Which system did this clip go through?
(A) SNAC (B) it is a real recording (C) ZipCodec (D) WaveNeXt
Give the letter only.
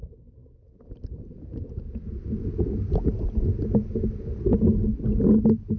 B